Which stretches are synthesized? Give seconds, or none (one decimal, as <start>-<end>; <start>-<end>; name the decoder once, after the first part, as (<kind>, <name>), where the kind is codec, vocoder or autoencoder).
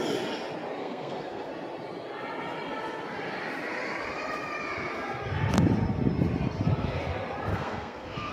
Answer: 0.8-1.5 (codec, SNAC); 7.5-8.3